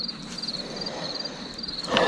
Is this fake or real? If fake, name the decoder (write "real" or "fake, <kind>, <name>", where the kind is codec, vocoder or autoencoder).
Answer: real